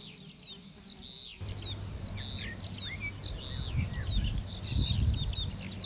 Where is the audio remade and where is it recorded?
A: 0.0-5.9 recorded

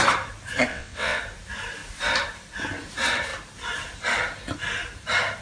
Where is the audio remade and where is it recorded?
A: 0.0-0.7 recorded; 0.7-1.2 remade; 1.2-5.4 recorded

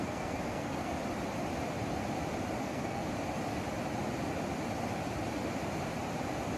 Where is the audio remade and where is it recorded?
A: 0.0-0.9 remade; 0.9-2.6 recorded; 2.6-3.0 remade; 3.0-6.6 recorded

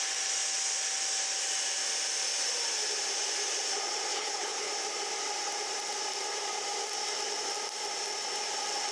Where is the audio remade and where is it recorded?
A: 0.0-4.1 recorded; 4.1-4.7 remade; 4.7-8.9 recorded

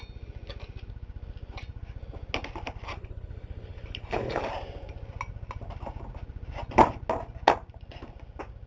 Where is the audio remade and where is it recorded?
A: 0.0-2.9 recorded; 2.9-4.4 remade; 4.4-8.7 recorded